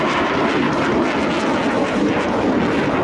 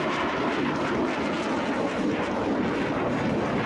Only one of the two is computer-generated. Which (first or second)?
second